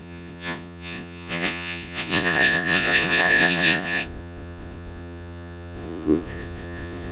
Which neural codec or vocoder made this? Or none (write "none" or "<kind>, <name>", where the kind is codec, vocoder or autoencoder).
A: vocoder, Vocos